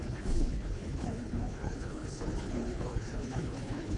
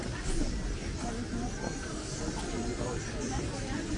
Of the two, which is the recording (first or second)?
second